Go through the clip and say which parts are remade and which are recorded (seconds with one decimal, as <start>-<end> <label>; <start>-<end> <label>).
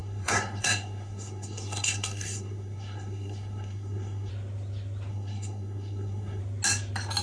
0.0-4.3 remade; 4.3-5.1 recorded; 5.1-6.4 remade; 6.4-7.2 recorded